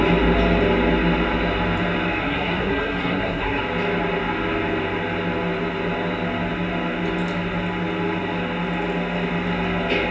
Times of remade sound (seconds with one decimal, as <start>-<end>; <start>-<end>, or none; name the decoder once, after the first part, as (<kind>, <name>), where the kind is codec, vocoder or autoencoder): 2.2-3.6 (codec, SNAC)